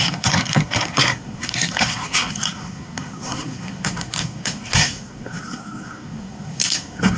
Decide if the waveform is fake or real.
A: fake